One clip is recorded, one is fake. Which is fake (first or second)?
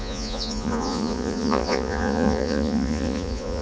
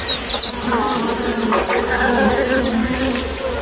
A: first